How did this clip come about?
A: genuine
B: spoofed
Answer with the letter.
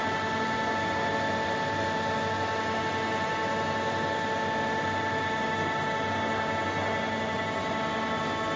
A